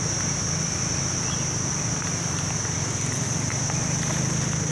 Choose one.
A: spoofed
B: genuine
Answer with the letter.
B